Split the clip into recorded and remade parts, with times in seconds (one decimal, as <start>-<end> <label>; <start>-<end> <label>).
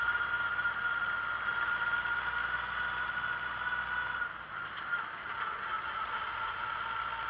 0.0-5.2 recorded; 5.2-6.8 remade; 6.8-7.3 recorded